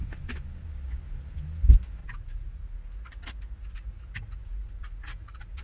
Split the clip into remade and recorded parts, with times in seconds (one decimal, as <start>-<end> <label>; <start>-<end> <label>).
0.0-2.0 recorded; 2.0-5.6 remade

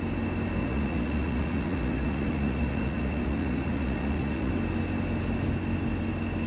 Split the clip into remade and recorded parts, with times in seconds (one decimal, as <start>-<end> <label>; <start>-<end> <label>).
0.0-0.6 recorded; 0.6-4.5 remade; 4.5-6.5 recorded

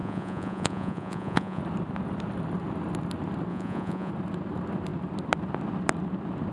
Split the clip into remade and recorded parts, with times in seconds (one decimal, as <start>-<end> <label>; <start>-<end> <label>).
0.0-1.6 remade; 1.6-3.5 recorded; 3.5-4.1 remade; 4.1-6.5 recorded

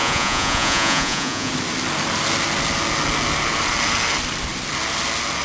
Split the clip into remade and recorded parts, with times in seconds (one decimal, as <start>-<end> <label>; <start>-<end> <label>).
0.0-1.5 remade; 1.5-5.4 recorded

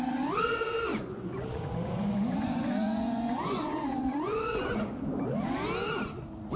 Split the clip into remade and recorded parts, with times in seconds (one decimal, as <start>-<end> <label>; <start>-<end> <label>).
0.0-0.9 recorded; 0.9-4.9 remade; 4.9-6.6 recorded

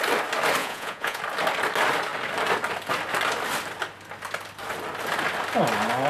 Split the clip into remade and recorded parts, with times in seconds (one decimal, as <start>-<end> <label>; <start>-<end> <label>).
0.0-0.6 recorded; 0.6-1.2 remade; 1.2-6.1 recorded

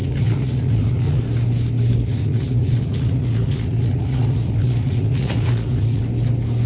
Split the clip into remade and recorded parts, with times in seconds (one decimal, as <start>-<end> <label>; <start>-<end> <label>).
0.0-1.2 remade; 1.2-2.0 recorded; 2.0-6.0 remade; 6.0-6.7 recorded

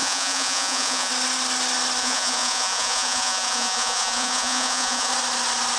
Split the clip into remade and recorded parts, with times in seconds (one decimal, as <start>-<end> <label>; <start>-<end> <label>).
0.0-1.1 remade; 1.1-2.0 recorded; 2.0-5.1 remade; 5.1-5.8 recorded